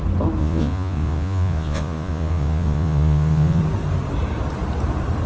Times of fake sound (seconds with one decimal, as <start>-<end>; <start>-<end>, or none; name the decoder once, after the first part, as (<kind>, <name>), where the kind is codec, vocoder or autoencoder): 0.4-3.6 (vocoder, Vocos)